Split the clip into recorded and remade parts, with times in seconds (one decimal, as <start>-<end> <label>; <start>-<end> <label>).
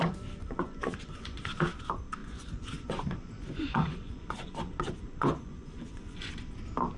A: 0.0-1.5 remade; 1.5-2.2 recorded; 2.2-6.3 remade; 6.3-7.0 recorded